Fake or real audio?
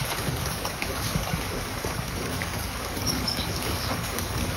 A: fake